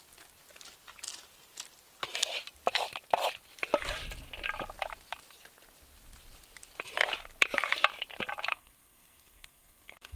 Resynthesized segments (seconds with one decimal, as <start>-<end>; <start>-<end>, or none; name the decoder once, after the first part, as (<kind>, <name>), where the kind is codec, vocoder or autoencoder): 8.5-10.2 (codec, SNAC)